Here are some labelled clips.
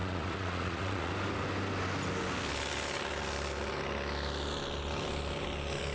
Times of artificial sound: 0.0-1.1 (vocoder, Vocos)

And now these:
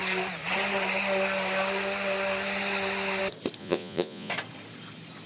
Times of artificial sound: 3.6-4.3 (vocoder, Vocos)

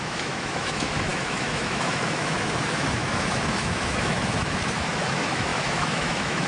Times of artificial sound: 0.0-6.5 (autoencoder, DAC-VAE)

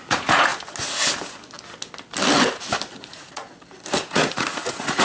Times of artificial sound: 0.0-0.5 (vocoder, Vocos); 3.0-3.4; 4.0-5.0

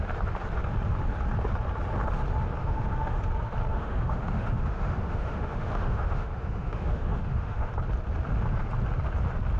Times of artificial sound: 2.6-3.2 (autoencoder, DAC-VAE); 3.7-7.7

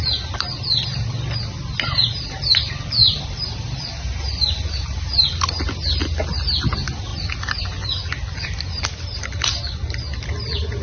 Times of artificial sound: 3.0-5.3 (vocoder, BigVGAN v2)

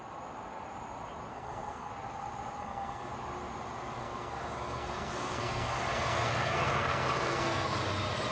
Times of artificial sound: 1.3-1.9 (codec, SNAC); 2.6-3.1; 4.0-7.8

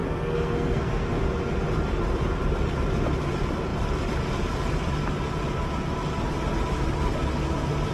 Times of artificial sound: 0.0-1.2 (codec, SNAC)